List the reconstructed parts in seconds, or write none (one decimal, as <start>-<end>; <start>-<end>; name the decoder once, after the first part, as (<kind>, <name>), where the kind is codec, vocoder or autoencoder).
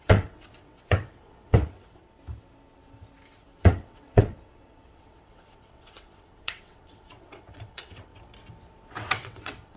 0.0-2.0 (vocoder, WaveNeXt); 3.6-8.1; 9.0-9.8